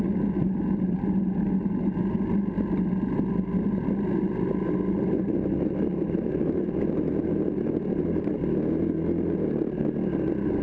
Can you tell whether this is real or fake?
real